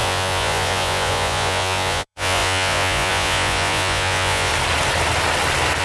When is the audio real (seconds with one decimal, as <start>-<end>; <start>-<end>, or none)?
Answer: 4.5-5.8